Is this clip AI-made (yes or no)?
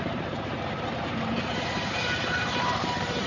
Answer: yes